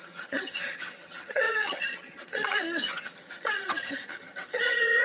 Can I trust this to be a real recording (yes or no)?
no